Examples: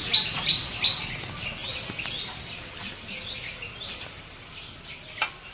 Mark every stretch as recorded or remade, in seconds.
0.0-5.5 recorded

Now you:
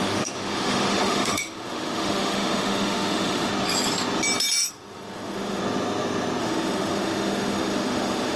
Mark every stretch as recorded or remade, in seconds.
0.0-3.5 remade; 3.5-4.7 recorded; 4.7-5.6 remade; 5.6-6.4 recorded; 6.4-8.4 remade

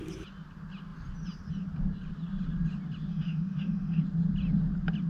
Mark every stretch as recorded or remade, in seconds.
0.0-3.1 recorded; 3.1-4.0 remade; 4.0-5.1 recorded

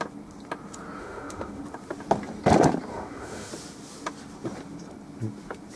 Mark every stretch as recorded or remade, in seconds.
0.0-1.0 recorded; 1.0-1.6 remade; 1.6-2.9 recorded; 2.9-3.5 remade; 3.5-5.8 recorded

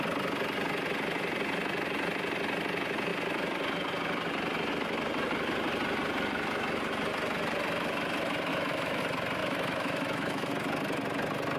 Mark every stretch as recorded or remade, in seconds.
0.0-8.5 recorded; 8.5-9.0 remade; 9.0-9.4 recorded; 9.4-10.5 remade; 10.5-11.6 recorded